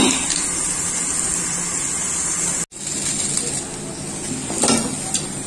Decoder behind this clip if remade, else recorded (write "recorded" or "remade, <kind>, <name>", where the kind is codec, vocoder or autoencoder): recorded